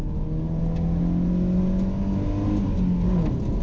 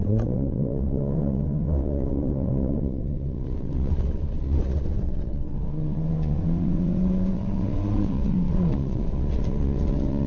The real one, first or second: first